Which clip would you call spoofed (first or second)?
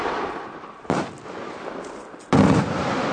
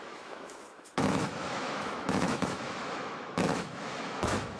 second